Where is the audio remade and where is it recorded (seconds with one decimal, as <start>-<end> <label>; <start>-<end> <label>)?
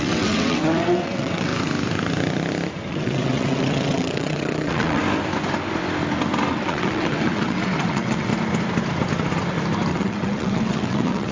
0.0-1.5 remade; 1.5-2.9 recorded; 2.9-5.0 remade; 5.0-6.5 recorded; 6.5-8.3 remade; 8.3-9.9 recorded; 9.9-11.3 remade